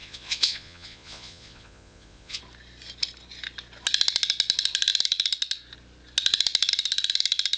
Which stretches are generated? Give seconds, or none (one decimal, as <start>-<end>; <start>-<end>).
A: 0.0-2.4